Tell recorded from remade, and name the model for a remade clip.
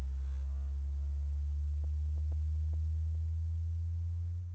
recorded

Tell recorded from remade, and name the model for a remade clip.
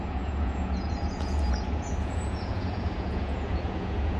remade, vocoder, Vocos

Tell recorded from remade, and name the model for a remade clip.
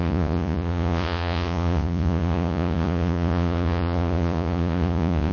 remade, vocoder, Vocos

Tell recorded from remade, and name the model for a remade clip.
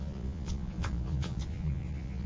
remade, vocoder, Vocos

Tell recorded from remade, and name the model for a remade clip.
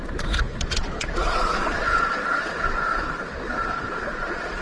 remade, vocoder, Vocos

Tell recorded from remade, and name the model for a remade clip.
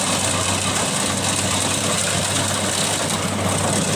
recorded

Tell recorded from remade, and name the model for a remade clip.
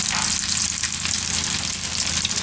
recorded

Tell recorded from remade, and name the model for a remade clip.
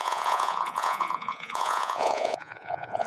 remade, vocoder, Vocos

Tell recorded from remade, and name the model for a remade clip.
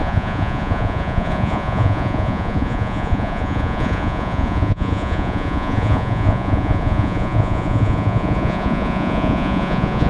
remade, vocoder, Vocos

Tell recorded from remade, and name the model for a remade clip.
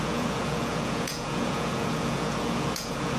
remade, vocoder, Vocos